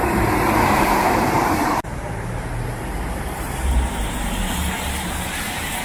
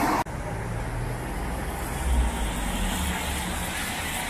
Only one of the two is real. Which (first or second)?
second